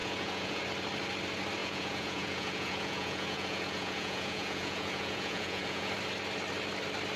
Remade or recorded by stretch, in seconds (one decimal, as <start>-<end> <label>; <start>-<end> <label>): 0.0-0.6 remade; 0.6-1.6 recorded; 1.6-5.9 remade; 5.9-7.2 recorded